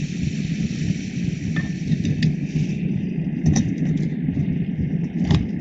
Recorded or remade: recorded